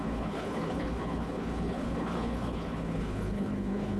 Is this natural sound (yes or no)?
no